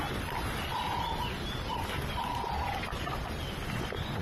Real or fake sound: real